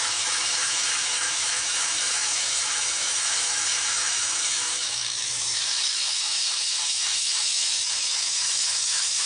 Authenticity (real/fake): fake